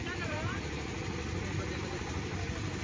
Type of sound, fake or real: fake